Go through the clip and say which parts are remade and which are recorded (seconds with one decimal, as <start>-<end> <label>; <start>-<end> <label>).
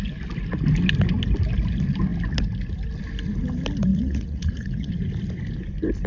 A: 0.0-3.9 recorded; 3.9-4.9 remade; 4.9-6.1 recorded